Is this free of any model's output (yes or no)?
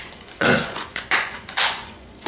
no